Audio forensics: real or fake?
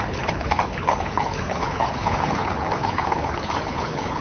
fake